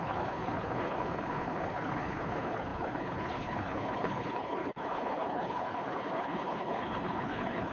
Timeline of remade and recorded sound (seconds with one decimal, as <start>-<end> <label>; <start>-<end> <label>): 0.0-7.7 remade